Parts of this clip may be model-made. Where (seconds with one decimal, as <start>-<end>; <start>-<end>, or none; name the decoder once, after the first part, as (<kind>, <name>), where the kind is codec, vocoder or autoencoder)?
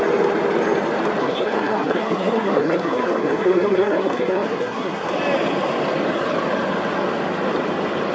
1.2-5.1 (codec, SNAC)